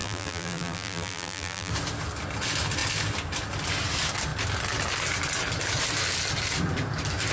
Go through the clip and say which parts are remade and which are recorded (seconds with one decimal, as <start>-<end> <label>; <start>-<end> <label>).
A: 0.0-1.7 remade; 1.7-7.3 recorded